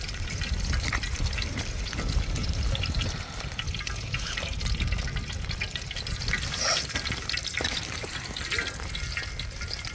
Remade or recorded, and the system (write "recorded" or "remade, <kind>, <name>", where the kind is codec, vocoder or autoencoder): remade, vocoder, BigVGAN v2